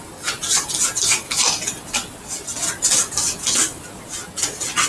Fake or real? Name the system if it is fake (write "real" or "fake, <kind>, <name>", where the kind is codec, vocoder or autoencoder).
real